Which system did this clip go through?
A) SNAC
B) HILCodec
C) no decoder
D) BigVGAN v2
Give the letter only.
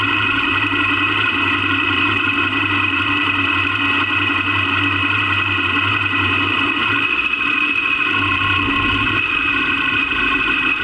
D